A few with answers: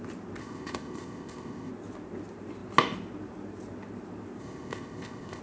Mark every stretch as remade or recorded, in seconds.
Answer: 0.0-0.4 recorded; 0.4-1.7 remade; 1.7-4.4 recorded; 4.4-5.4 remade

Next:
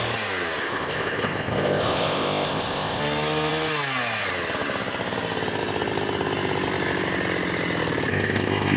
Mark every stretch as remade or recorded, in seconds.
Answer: 0.0-0.6 recorded; 0.6-3.0 remade; 3.0-8.1 recorded; 8.1-8.8 remade

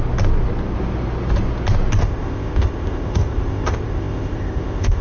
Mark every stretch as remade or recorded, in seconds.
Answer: 0.0-2.0 recorded; 2.0-5.0 remade

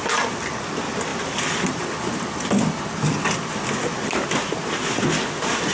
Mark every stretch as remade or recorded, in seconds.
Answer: 0.0-5.7 recorded

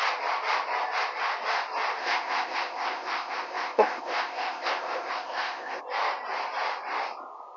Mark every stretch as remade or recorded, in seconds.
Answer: 0.0-2.0 recorded; 2.0-5.8 remade; 5.8-7.6 recorded

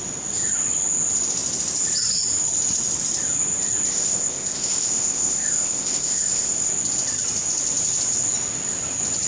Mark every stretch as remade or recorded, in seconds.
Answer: 0.0-3.9 recorded; 3.9-6.7 remade; 6.7-9.3 recorded

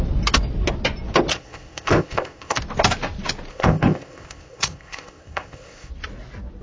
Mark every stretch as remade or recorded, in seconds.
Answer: 0.0-1.3 recorded; 1.3-2.6 remade; 2.6-3.5 recorded; 3.5-5.9 remade; 5.9-6.6 recorded